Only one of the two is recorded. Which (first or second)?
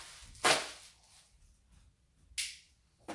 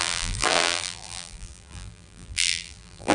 first